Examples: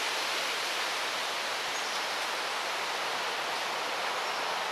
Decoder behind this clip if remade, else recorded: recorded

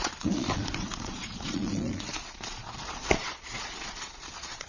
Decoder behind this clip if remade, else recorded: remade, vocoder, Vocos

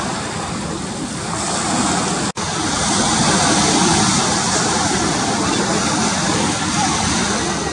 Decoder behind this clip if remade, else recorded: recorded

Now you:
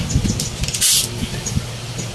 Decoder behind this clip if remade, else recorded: recorded